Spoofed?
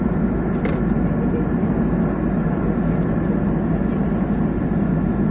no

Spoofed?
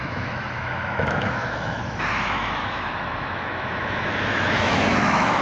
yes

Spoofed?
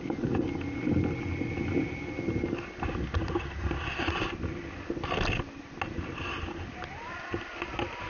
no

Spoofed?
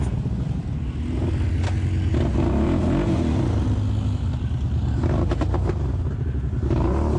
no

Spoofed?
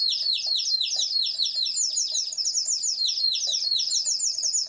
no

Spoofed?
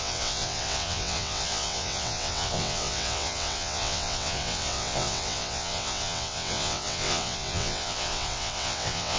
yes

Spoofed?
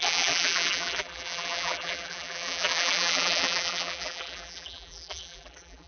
yes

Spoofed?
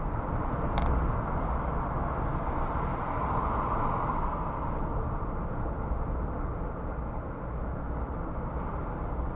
no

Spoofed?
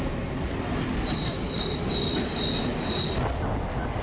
no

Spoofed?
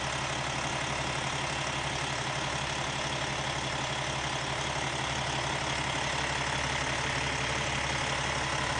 no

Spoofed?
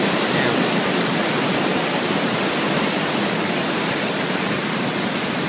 no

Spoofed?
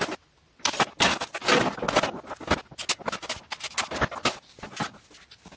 no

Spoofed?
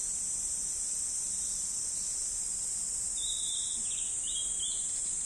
yes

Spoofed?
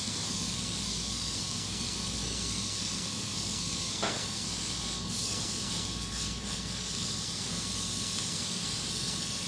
yes